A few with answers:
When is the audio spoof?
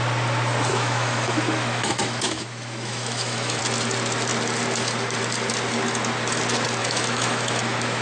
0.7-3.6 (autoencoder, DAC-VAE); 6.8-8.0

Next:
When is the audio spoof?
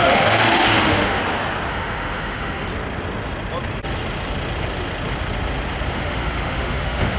0.0-1.2 (autoencoder, DAC-VAE); 1.7-2.7; 5.9-7.2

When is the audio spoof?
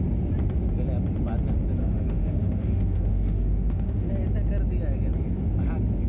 1.8-4.1 (autoencoder, DAC-VAE)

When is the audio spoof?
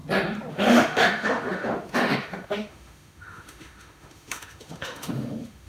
0.5-5.7 (autoencoder, DAC-VAE)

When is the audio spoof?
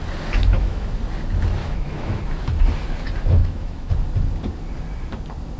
0.4-1.0 (autoencoder, DAC-VAE); 1.6-2.2; 3.4-3.9